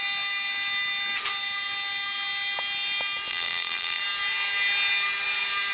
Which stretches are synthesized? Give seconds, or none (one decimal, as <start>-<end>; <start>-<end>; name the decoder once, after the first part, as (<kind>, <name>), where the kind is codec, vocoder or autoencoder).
3.3-4.0 (vocoder, BigVGAN v2)